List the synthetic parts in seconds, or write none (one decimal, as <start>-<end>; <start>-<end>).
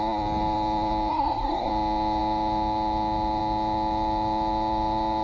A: 1.1-1.7